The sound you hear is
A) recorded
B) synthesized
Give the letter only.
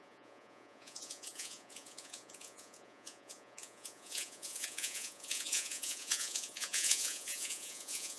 B